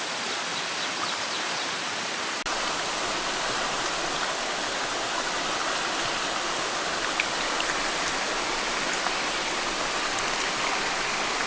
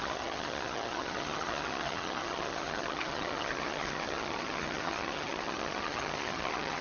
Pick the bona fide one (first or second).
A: first